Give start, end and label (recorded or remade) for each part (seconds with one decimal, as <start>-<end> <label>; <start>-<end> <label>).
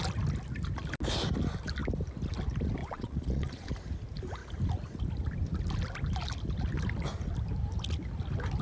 0.0-2.8 recorded; 2.8-3.7 remade; 3.7-8.6 recorded